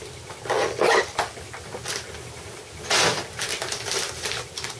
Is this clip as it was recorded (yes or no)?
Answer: yes